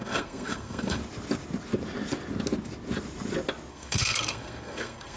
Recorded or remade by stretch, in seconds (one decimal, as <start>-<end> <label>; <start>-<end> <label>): 0.0-1.0 remade; 1.0-3.7 recorded; 3.7-5.2 remade